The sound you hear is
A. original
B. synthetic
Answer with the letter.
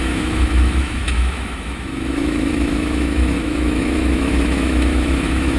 B